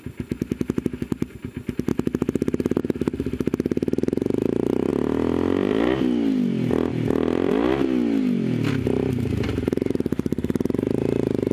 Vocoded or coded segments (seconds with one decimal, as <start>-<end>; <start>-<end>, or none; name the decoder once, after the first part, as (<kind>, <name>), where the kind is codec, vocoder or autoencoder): none